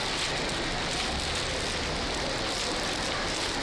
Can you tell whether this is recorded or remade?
recorded